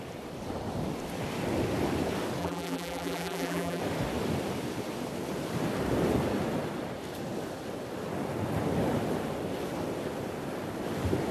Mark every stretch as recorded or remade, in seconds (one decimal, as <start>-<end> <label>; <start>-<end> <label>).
0.0-2.4 recorded; 2.4-3.8 remade; 3.8-11.3 recorded